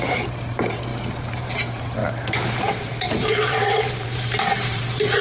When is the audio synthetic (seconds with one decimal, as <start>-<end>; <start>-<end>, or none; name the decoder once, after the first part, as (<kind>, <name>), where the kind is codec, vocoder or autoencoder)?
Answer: 0.0-5.2 (vocoder, BigVGAN v2)

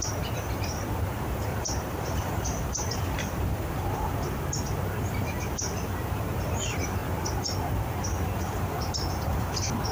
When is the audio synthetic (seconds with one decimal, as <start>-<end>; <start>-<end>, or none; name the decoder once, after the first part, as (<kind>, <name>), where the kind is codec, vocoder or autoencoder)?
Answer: 1.5-3.0 (vocoder, BigVGAN v2)

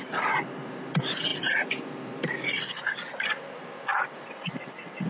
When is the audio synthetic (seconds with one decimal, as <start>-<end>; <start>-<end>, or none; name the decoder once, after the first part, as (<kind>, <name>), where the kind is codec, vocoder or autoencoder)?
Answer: 1.3-2.7 (vocoder, BigVGAN v2); 3.9-5.1

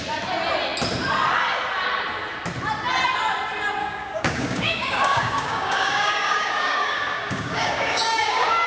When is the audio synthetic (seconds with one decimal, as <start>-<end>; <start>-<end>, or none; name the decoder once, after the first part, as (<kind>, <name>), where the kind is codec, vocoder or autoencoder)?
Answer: 3.8-8.7 (codec, DAC)

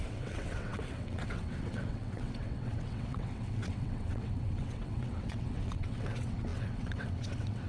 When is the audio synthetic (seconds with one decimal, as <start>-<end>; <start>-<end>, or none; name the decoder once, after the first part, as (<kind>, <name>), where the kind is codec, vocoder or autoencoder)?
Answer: 0.0-7.7 (vocoder, WaveNeXt)

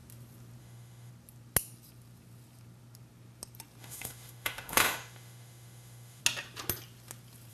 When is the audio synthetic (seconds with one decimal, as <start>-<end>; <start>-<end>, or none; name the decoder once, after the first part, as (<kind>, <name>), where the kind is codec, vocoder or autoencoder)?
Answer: 0.6-1.1 (autoencoder, DAC-VAE); 3.8-6.2

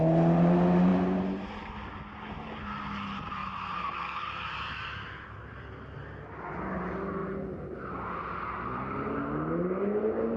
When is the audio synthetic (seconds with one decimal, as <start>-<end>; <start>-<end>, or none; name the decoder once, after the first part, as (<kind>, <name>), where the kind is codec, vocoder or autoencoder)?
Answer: none